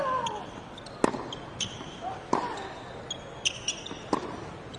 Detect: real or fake real